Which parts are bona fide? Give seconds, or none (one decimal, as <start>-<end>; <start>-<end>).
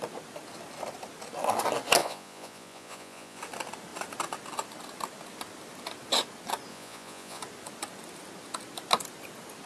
0.0-2.0; 3.4-6.7; 7.4-9.7